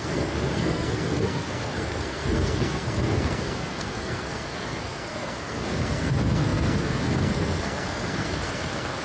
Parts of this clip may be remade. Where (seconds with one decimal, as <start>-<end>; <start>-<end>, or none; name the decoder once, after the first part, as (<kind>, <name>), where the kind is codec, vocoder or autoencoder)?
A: 0.0-9.0 (codec, SNAC)